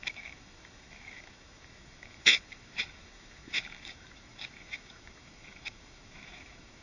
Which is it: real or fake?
fake